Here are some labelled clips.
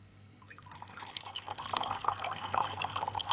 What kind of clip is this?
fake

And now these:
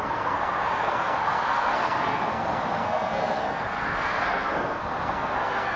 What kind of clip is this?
fake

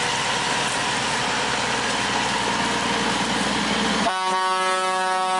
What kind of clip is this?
real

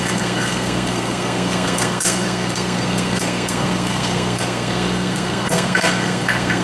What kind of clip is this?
fake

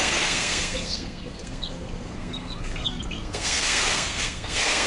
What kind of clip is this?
fake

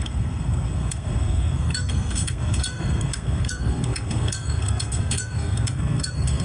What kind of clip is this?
fake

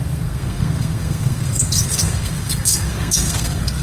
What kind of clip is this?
fake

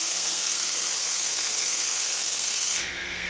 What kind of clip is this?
fake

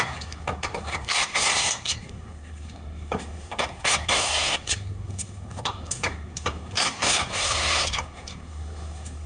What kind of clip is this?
fake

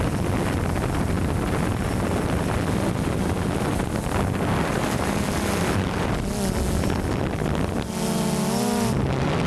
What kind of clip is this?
real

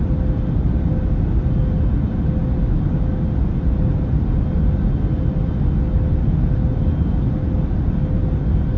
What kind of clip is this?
real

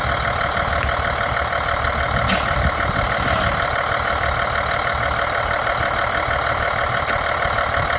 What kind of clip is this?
real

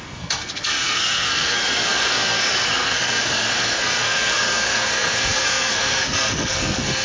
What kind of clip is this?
fake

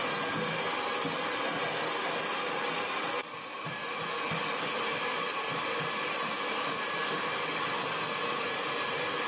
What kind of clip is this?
real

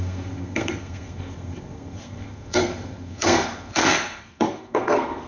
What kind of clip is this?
fake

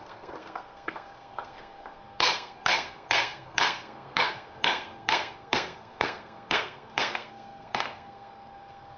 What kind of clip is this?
fake